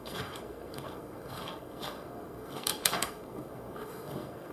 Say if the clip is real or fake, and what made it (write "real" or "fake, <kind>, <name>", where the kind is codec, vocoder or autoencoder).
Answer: fake, codec, SNAC